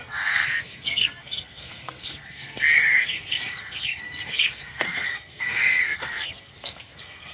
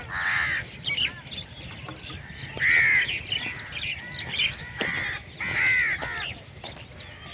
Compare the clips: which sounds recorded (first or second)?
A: second